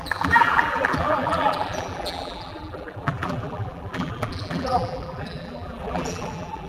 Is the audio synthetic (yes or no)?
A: yes